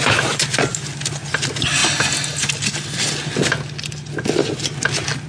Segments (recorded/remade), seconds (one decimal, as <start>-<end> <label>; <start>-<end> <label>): 0.0-5.3 recorded